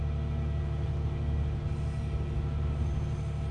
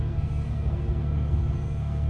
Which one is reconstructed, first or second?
second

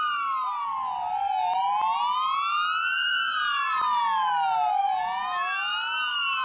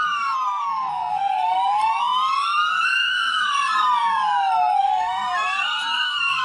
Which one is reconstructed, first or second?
second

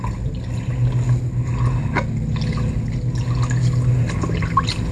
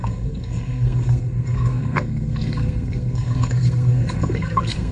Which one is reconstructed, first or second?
second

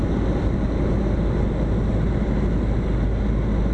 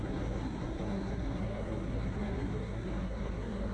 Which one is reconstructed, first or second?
second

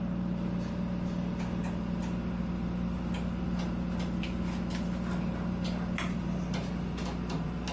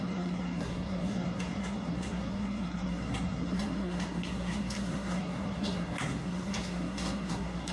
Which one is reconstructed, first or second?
second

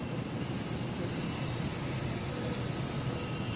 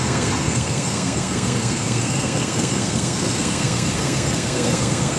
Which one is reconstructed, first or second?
second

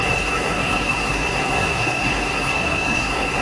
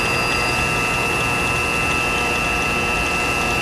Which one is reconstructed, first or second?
first